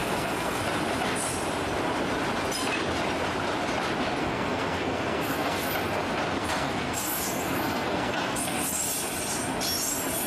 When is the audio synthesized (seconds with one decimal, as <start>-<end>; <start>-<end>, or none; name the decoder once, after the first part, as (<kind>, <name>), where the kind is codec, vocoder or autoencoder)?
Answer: 0.0-0.6 (codec, SNAC); 4.2-5.7; 6.4-8.8